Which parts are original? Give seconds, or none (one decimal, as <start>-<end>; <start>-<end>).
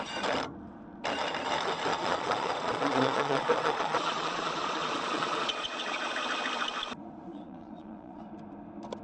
0.0-1.9; 6.2-7.3; 8.2-9.0